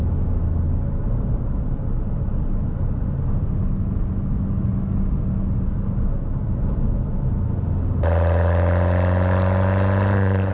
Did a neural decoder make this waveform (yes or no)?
no